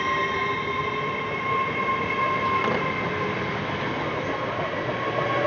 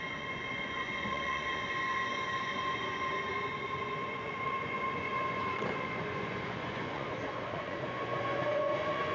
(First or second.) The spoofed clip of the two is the second